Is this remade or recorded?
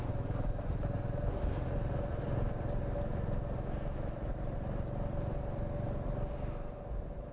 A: recorded